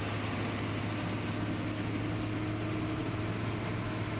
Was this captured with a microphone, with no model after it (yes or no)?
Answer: yes